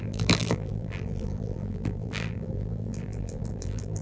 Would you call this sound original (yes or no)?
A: no